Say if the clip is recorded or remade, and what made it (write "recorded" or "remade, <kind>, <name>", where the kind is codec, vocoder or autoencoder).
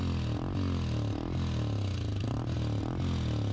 recorded